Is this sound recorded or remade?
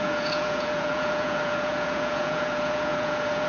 remade